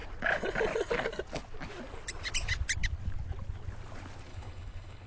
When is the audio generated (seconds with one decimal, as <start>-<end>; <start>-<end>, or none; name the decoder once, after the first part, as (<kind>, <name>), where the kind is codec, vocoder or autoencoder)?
4.3-5.1 (codec, HILCodec)